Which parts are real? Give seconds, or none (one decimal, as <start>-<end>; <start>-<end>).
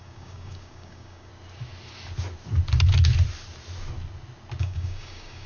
1.3-4.6